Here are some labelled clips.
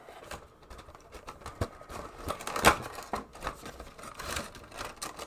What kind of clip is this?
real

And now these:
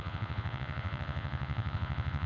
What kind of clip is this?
fake